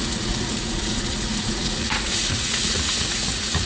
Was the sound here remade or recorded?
remade